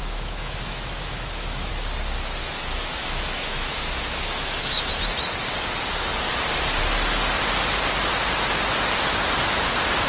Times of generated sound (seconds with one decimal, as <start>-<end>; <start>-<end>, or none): 0.0-1.7; 2.4-4.9